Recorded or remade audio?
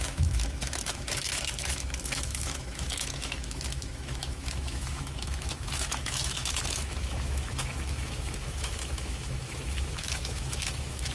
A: remade